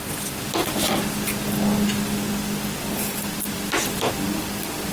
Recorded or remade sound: recorded